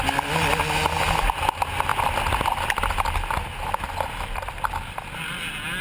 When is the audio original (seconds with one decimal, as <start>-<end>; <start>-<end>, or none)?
0.0-5.8